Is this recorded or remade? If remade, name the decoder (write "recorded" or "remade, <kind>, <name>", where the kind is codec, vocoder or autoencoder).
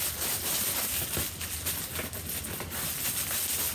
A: recorded